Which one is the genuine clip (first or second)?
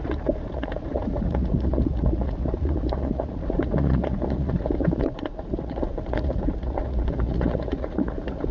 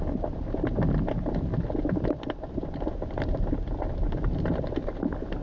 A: second